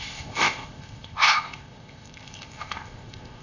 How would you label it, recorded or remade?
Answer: remade